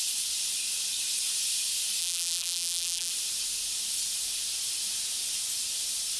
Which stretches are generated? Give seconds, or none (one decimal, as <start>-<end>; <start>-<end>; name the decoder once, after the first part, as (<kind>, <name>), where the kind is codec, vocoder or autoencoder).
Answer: 2.0-3.1 (vocoder, BigVGAN v2)